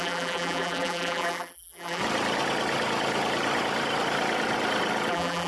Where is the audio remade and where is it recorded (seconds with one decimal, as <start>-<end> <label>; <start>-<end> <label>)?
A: 0.0-2.0 remade; 2.0-5.1 recorded; 5.1-5.5 remade